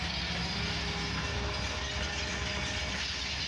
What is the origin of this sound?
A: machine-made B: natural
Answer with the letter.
B